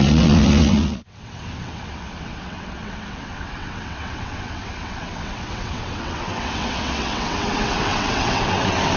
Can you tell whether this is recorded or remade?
remade